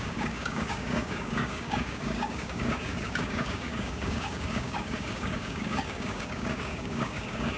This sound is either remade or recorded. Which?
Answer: remade